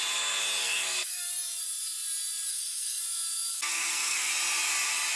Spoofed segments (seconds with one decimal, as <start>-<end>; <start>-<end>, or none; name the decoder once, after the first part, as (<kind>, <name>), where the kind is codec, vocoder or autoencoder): 0.6-1.3 (codec, SNAC); 2.5-3.0; 3.5-4.3